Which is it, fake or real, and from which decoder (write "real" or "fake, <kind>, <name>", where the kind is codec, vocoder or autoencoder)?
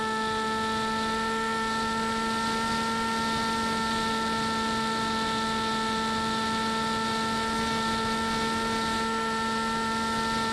real